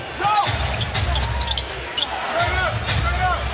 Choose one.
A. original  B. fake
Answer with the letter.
A